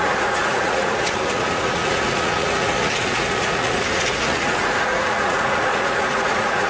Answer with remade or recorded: remade